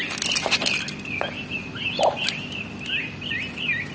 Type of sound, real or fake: real